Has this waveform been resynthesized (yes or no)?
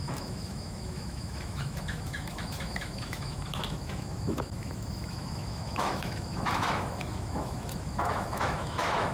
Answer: yes